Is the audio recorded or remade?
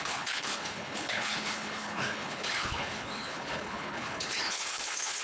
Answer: remade